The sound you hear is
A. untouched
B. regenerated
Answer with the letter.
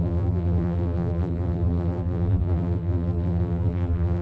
B